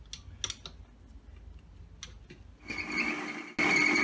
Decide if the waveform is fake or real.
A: real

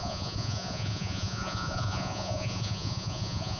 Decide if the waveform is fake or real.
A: fake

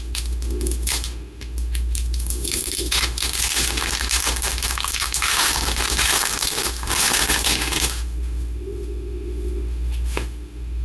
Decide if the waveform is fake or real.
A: fake